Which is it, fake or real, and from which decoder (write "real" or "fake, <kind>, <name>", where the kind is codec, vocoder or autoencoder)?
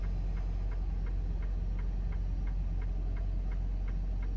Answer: real